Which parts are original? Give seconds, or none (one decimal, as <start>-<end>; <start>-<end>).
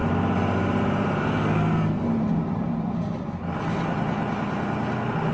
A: 0.0-1.2; 2.1-5.3